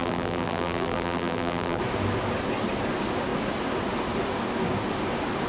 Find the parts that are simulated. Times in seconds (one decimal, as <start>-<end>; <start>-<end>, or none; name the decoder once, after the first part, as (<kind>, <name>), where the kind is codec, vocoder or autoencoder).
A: 0.0-1.8 (vocoder, BigVGAN v2)